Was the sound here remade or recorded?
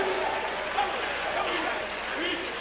remade